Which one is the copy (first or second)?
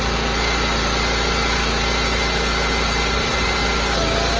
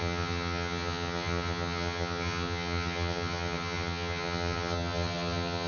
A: second